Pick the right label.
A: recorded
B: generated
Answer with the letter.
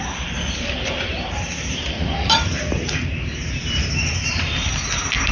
B